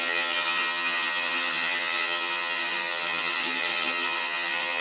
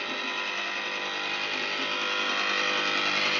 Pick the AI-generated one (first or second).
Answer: first